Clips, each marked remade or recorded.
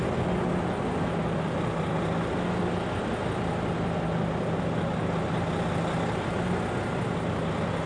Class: recorded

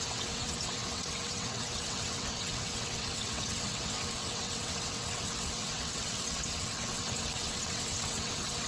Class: remade